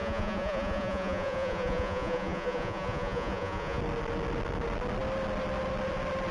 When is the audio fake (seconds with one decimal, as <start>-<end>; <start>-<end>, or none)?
0.0-3.8